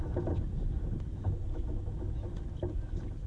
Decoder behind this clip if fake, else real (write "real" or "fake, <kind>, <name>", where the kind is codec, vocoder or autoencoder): real